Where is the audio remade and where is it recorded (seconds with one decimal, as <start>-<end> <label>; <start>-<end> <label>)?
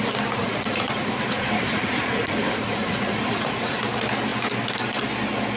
0.0-0.4 recorded; 0.4-3.8 remade; 3.8-5.6 recorded